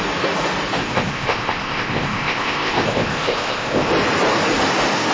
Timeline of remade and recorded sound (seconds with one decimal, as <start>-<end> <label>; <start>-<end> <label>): 0.0-0.8 recorded; 0.8-3.9 remade; 3.9-5.1 recorded